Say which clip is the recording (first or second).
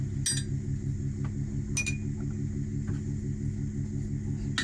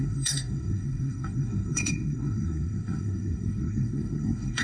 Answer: first